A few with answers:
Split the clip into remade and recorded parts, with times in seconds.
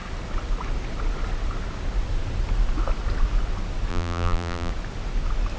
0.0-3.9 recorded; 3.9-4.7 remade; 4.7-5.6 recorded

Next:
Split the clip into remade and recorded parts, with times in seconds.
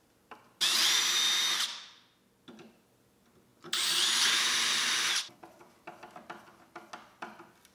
0.0-7.7 recorded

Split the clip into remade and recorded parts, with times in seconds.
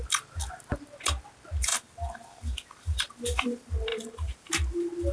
0.0-3.9 recorded; 3.9-4.5 remade; 4.5-5.1 recorded